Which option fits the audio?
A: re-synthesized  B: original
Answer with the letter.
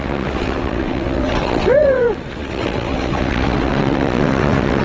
A